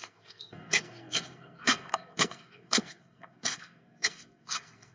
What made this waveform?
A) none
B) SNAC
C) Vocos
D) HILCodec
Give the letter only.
B